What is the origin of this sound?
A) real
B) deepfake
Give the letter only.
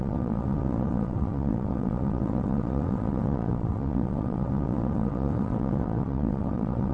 B